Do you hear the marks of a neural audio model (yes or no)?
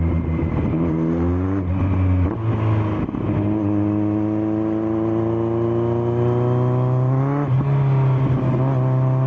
no